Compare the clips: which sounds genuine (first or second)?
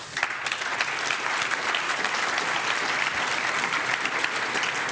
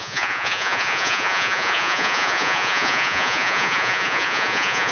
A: first